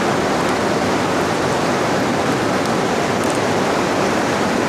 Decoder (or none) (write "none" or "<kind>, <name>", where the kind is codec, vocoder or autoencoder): none